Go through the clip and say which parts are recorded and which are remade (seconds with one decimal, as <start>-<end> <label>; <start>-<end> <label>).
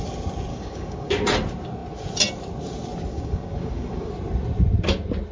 0.0-0.5 recorded; 0.5-1.1 remade; 1.1-3.1 recorded; 3.1-4.1 remade; 4.1-5.3 recorded